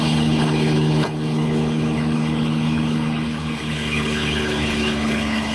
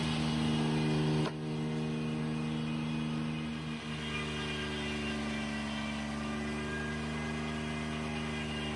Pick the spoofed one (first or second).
first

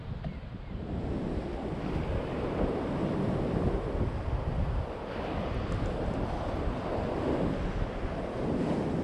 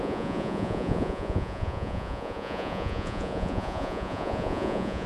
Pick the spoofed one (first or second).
second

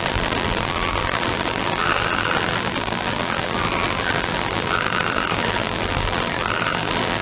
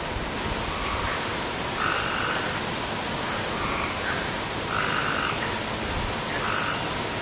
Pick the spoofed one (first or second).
first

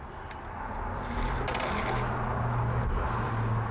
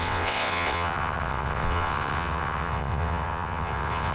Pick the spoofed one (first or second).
second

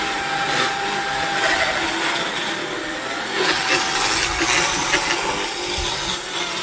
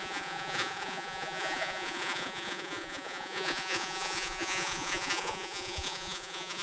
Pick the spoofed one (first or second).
second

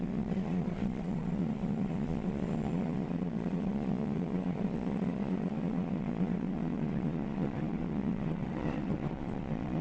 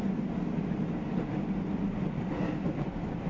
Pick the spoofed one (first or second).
first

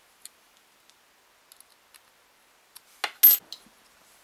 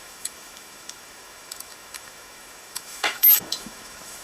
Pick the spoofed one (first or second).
second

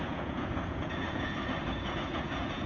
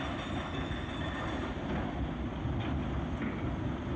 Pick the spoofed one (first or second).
first